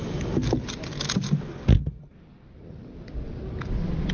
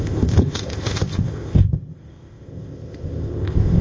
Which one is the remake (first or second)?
second